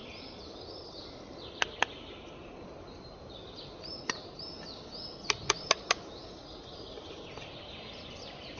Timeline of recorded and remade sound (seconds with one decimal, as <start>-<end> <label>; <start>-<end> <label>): 0.0-8.6 recorded